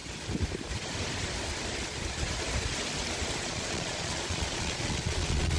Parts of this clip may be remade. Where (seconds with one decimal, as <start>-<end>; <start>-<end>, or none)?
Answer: 3.4-5.6